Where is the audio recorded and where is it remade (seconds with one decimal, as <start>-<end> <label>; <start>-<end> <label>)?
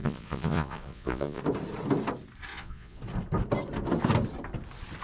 0.0-1.4 remade; 1.4-2.5 recorded; 2.5-3.0 remade; 3.0-5.0 recorded